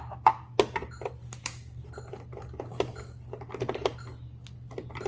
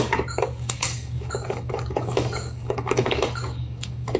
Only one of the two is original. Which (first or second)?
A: first